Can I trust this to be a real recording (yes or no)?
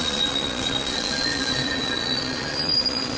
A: no